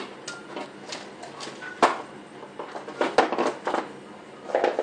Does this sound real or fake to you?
real